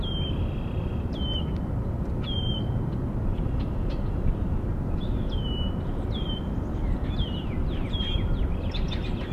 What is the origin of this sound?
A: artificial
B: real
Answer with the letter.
A